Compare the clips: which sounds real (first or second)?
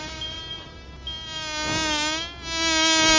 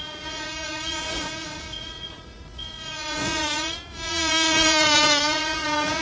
first